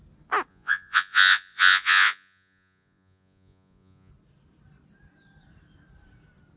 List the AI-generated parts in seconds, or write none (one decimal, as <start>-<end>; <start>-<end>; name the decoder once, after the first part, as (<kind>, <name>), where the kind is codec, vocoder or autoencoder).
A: 0.5-4.1 (vocoder, Vocos)